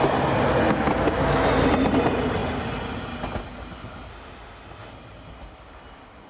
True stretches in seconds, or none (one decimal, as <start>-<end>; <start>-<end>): 0.0-4.1; 4.9-6.3